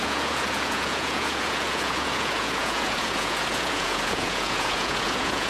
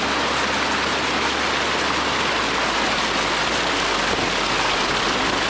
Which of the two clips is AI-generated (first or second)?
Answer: first